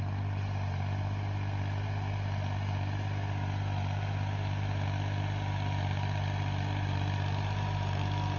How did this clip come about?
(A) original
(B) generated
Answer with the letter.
A